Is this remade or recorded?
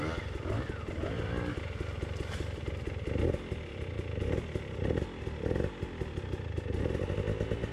recorded